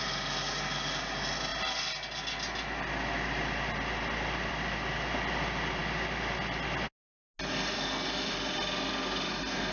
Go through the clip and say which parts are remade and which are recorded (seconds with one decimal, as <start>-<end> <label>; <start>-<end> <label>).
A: 0.0-9.7 recorded